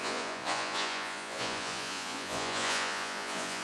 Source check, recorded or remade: remade